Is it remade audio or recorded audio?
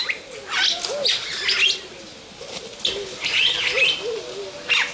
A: recorded